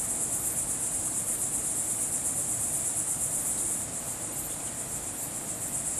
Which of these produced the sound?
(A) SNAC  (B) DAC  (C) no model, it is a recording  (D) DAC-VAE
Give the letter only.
C